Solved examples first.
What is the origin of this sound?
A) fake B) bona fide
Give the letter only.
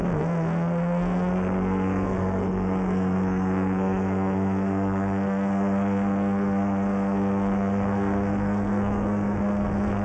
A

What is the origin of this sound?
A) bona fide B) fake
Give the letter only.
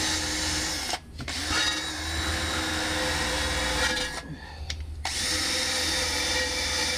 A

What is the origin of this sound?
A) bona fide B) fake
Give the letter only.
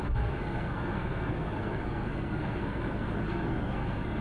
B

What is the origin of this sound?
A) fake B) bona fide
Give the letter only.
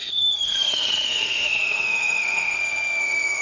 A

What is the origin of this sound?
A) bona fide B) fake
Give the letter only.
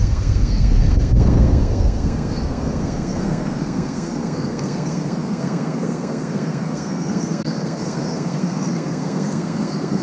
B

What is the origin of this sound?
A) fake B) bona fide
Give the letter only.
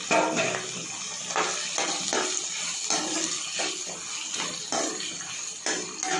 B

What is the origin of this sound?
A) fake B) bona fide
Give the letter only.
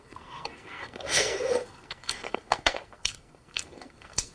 A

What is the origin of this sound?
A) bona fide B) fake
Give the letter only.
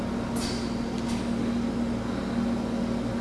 A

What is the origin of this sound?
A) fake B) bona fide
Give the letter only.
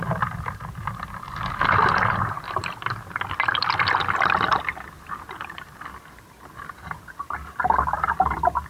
B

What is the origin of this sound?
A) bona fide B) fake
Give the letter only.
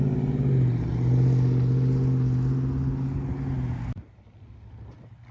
A